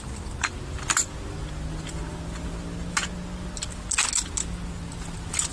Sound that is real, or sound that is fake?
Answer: real